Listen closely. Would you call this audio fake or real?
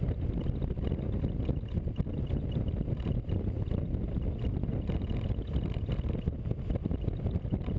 real